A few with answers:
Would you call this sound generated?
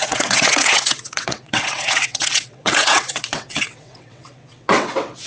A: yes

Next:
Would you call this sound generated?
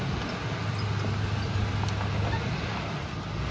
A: no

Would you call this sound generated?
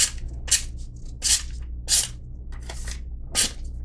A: no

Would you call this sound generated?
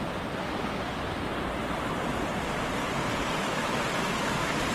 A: no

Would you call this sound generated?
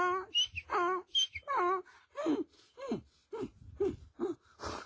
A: no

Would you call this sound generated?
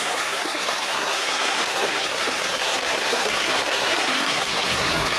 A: yes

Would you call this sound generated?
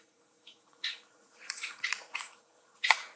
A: yes